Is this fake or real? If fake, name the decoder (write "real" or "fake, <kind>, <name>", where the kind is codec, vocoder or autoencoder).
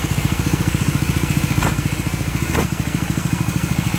fake, codec, SNAC